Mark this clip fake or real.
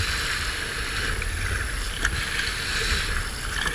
real